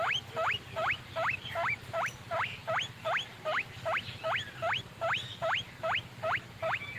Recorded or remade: recorded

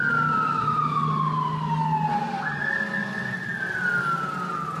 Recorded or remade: recorded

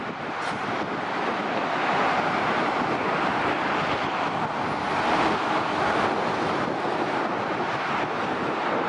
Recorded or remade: recorded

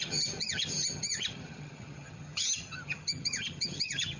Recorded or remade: remade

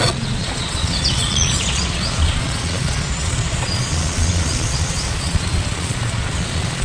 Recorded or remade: remade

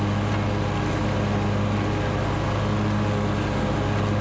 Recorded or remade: recorded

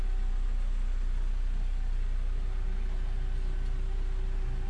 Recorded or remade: recorded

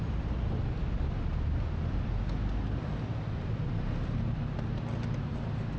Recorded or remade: recorded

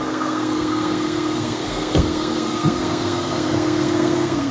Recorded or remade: remade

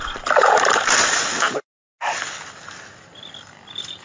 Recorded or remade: recorded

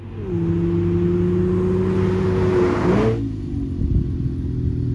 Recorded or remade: recorded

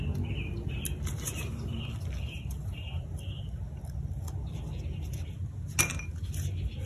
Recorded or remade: recorded